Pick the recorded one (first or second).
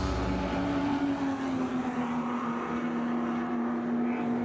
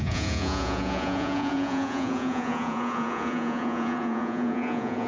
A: first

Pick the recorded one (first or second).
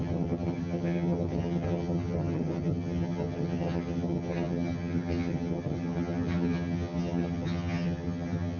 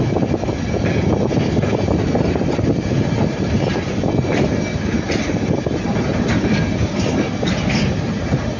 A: second